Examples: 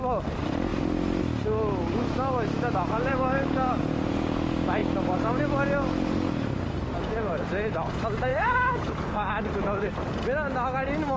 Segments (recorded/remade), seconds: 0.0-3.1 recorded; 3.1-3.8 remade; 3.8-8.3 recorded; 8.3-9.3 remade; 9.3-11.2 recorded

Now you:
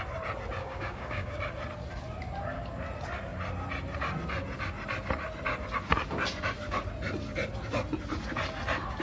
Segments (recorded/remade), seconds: 0.0-0.6 recorded; 0.6-1.4 remade; 1.4-9.0 recorded

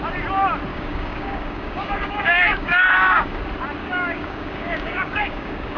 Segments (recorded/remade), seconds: 0.0-0.7 recorded; 0.7-3.4 remade; 3.4-3.8 recorded; 3.8-5.8 remade

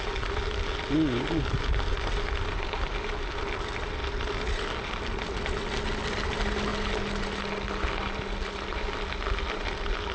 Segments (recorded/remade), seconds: 0.0-10.1 recorded

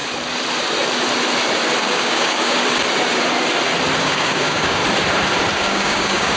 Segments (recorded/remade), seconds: 0.0-1.8 recorded; 1.8-2.6 remade; 2.6-4.0 recorded; 4.0-4.8 remade; 4.8-5.5 recorded; 5.5-6.4 remade

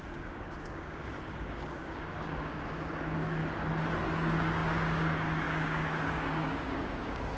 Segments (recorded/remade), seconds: 0.0-3.4 remade; 3.4-4.1 recorded; 4.1-7.4 remade

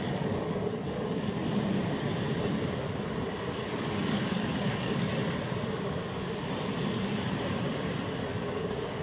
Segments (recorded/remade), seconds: 0.0-1.4 remade; 1.4-3.6 recorded; 3.6-5.1 remade; 5.1-8.3 recorded; 8.3-9.0 remade

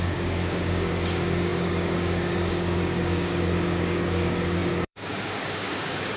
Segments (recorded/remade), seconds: 0.0-6.2 remade